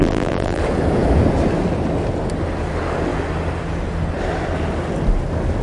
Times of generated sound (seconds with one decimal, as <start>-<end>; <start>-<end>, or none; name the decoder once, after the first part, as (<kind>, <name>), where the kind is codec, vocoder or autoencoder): 0.0-0.6 (vocoder, BigVGAN v2)